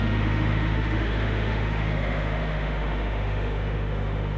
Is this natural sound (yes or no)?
no